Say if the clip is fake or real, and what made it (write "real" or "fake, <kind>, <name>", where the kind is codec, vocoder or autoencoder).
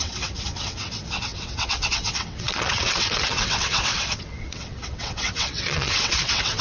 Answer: fake, vocoder, WaveNeXt